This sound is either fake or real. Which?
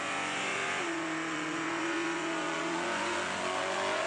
fake